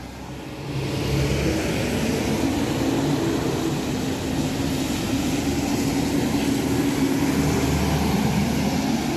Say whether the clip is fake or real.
real